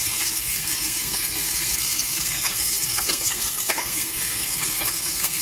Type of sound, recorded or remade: remade